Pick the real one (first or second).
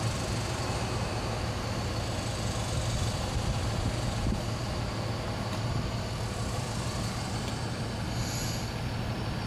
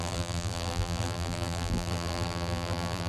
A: first